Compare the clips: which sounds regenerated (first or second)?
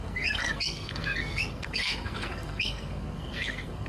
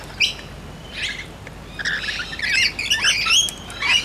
first